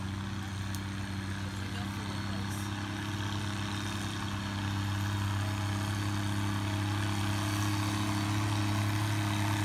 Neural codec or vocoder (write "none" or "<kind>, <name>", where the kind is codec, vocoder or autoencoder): none